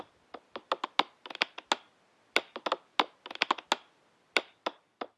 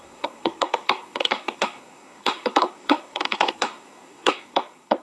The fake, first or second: second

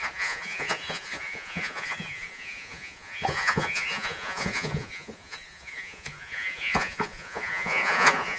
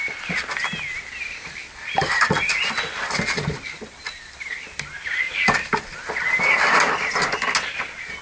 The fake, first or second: first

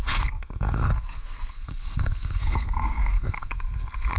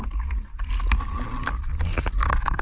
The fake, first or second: first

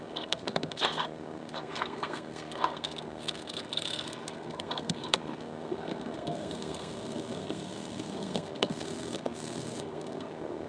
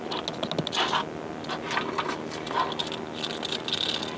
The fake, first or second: first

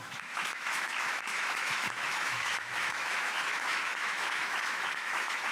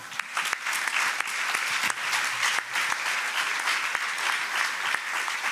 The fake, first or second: first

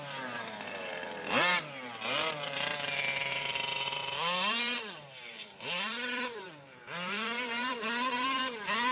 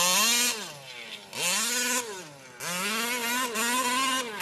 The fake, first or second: first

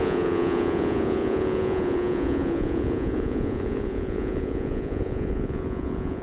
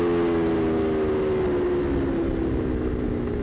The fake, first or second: first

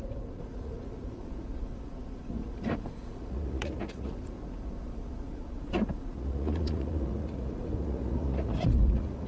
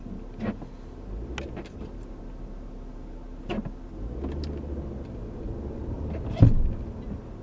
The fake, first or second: first